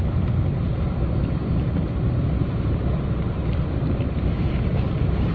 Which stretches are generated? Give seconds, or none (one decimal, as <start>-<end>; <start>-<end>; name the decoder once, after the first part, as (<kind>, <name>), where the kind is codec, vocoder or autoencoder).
1.4-2.8 (vocoder, BigVGAN v2)